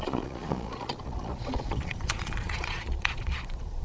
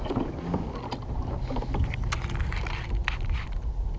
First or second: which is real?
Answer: second